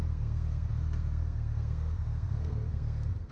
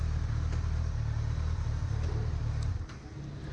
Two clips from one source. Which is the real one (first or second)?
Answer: second